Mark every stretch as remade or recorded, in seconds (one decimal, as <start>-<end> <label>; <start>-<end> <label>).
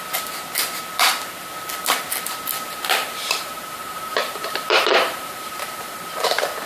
0.0-3.0 recorded; 3.0-6.0 remade; 6.0-6.7 recorded